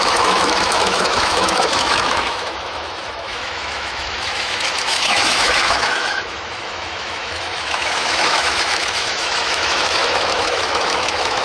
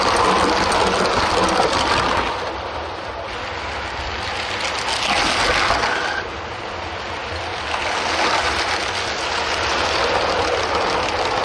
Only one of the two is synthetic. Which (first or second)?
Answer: first